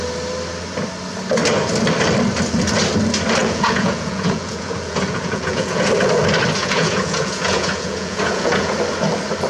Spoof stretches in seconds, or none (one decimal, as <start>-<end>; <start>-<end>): 3.4-5.9; 6.6-8.7